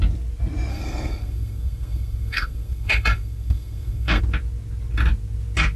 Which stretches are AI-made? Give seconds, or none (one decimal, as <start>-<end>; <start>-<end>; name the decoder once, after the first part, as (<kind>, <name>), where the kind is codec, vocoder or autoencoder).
0.7-4.2 (codec, SNAC)